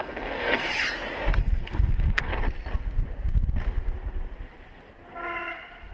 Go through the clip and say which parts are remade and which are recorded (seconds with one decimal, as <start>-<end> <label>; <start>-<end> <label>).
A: 0.0-0.7 remade; 0.7-1.4 recorded; 1.4-2.3 remade; 2.3-5.9 recorded